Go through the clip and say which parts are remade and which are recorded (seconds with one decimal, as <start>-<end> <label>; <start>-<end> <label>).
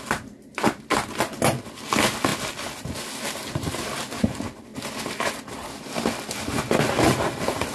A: 0.0-7.7 recorded